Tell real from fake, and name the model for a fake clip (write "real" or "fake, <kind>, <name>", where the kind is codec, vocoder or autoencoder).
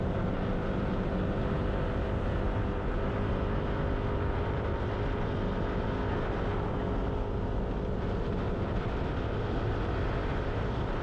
real